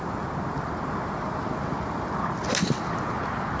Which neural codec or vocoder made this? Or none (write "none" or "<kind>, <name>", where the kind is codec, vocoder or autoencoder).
none